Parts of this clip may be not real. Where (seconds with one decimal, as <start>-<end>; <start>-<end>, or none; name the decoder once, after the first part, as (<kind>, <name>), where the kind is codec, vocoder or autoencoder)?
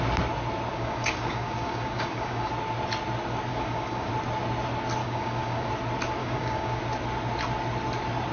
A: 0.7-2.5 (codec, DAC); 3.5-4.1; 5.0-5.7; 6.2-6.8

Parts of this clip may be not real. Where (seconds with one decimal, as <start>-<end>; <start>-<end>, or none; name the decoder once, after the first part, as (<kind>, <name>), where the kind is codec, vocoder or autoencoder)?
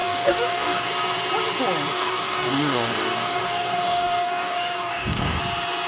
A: 0.0-0.9 (codec, DAC); 1.9-5.4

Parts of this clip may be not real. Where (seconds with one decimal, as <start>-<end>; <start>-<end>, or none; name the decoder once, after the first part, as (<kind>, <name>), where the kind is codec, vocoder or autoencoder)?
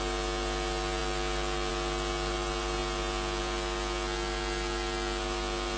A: none